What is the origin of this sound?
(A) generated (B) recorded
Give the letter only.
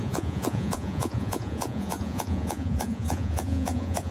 A